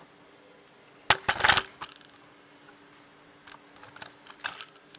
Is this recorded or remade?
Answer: recorded